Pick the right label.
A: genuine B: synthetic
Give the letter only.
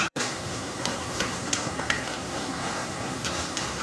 B